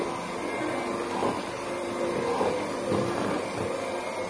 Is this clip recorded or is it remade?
recorded